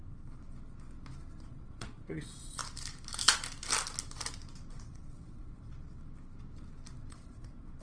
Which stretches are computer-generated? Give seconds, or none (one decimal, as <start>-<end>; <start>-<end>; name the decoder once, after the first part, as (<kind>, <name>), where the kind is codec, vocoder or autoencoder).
1.5-2.6 (vocoder, Vocos); 4.7-5.7; 7.1-7.8